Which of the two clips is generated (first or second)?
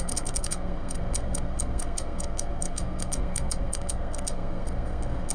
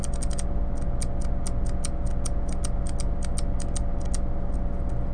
first